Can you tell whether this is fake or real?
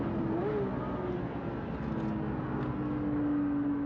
real